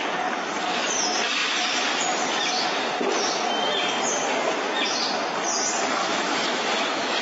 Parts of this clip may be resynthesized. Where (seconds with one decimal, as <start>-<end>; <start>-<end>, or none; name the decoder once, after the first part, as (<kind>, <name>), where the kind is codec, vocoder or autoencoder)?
6.0-7.2 (autoencoder, DAC-VAE)